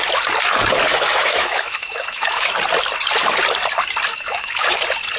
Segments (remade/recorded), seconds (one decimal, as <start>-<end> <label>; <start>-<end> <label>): 0.0-0.9 recorded; 0.9-2.5 remade; 2.5-4.1 recorded; 4.1-4.8 remade; 4.8-5.2 recorded